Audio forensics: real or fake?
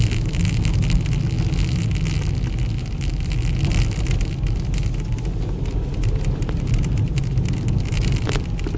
real